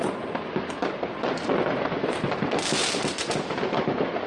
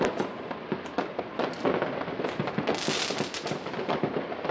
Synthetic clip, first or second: first